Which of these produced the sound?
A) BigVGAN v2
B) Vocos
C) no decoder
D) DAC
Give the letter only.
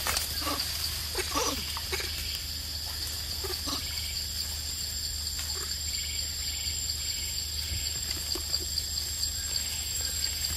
C